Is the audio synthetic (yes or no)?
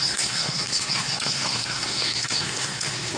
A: yes